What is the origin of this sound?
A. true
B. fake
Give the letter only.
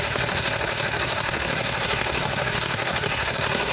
B